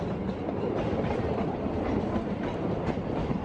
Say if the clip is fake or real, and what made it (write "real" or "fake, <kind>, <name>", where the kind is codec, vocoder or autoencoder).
real